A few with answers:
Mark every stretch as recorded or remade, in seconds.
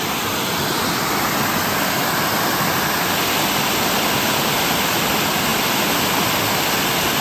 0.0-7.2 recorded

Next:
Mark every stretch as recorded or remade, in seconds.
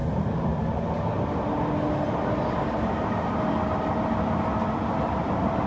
0.0-5.7 recorded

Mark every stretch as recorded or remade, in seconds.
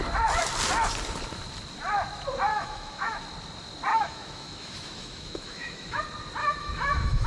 0.0-2.5 recorded; 2.5-3.2 remade; 3.2-3.9 recorded; 3.9-6.0 remade; 6.0-6.4 recorded; 6.4-7.3 remade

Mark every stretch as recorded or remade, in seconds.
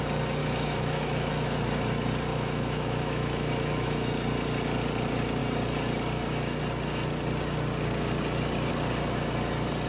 0.0-0.4 recorded; 0.4-1.3 remade; 1.3-2.3 recorded; 2.3-4.1 remade; 4.1-9.9 recorded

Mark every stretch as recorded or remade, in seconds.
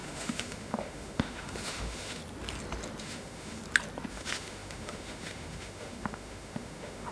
0.0-2.2 remade; 2.2-3.0 recorded; 3.0-3.6 remade; 3.6-4.1 recorded; 4.1-7.1 remade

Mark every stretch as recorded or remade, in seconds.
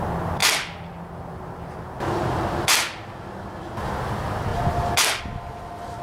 0.0-6.0 recorded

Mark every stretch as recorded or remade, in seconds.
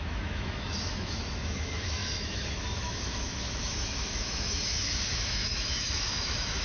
0.0-6.6 remade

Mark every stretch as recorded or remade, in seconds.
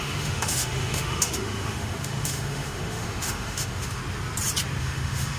0.0-4.0 remade; 4.0-4.8 recorded; 4.8-5.4 remade